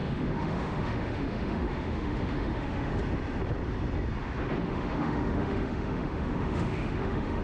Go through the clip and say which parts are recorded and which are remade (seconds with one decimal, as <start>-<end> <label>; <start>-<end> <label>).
0.0-3.0 remade; 3.0-4.6 recorded; 4.6-7.4 remade